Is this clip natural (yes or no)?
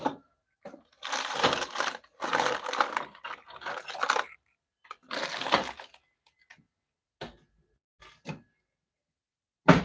yes